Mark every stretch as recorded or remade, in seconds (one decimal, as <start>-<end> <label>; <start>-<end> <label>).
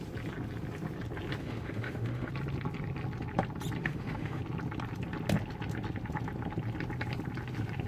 0.0-1.4 recorded; 1.4-2.3 remade; 2.3-3.8 recorded; 3.8-4.4 remade; 4.4-7.9 recorded